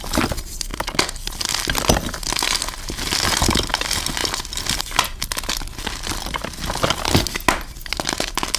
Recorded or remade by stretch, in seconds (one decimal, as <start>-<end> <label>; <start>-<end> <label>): 0.0-8.6 recorded